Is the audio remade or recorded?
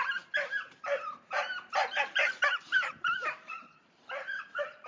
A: remade